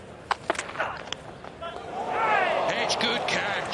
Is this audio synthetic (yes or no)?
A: no